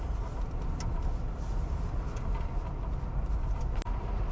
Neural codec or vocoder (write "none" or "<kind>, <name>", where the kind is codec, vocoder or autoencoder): none